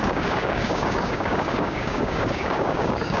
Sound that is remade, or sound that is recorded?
remade